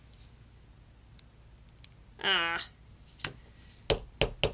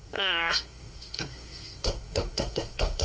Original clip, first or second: first